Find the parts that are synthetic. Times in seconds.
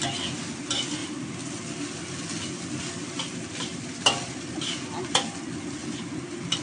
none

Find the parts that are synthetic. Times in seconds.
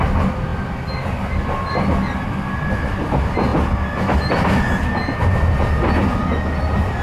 none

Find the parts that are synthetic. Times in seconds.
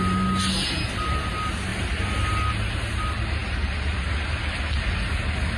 none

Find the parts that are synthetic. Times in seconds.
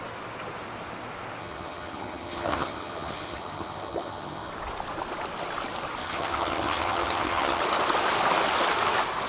1.4-4.5; 6.0-7.6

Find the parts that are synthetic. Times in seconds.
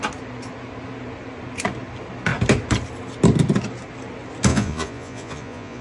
4.5-5.8